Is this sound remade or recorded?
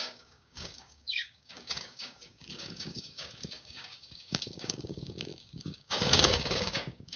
remade